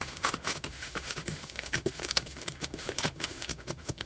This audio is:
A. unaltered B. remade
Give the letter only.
B